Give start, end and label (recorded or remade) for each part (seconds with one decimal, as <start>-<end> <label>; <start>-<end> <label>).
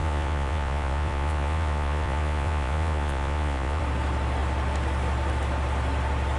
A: 0.0-3.8 remade; 3.8-6.4 recorded